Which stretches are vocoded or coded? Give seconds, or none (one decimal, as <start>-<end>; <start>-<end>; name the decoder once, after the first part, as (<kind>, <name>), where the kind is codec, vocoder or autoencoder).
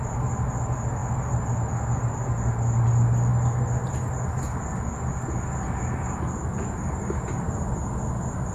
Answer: none